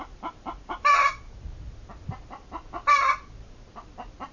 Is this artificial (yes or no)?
no